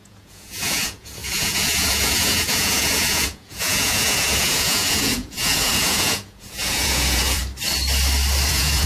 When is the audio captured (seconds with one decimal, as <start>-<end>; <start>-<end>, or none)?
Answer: 7.4-8.5